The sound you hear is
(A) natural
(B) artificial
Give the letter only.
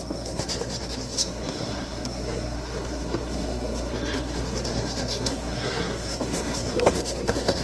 B